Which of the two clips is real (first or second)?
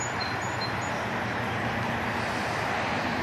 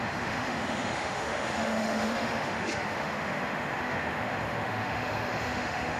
first